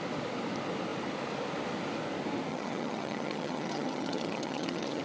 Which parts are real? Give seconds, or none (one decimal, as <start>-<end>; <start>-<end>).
0.0-2.5